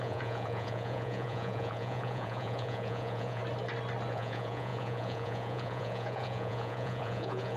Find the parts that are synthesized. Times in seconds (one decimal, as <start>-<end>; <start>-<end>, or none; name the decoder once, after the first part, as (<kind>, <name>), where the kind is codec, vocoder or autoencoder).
0.0-3.4 (vocoder, Vocos); 4.1-7.6